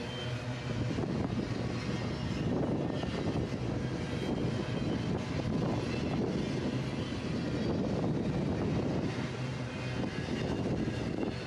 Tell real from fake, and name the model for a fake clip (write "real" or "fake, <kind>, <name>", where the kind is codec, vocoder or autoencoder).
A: real